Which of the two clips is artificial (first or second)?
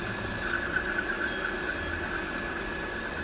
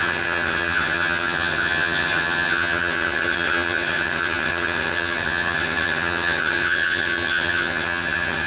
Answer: second